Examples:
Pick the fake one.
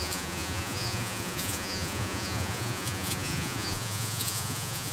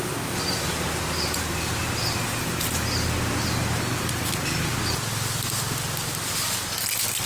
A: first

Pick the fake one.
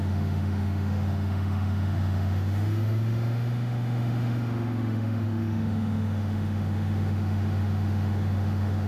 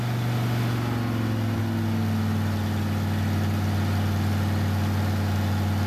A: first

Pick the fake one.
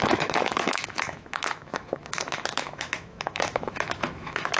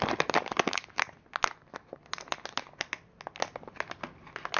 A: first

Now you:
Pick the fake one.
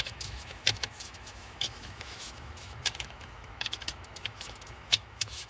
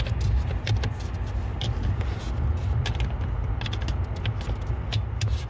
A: first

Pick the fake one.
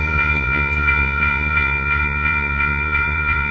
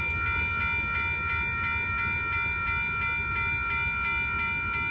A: first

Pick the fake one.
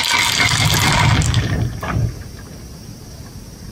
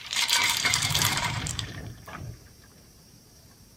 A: second